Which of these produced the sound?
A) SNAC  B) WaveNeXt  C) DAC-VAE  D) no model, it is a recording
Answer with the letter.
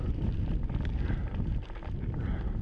D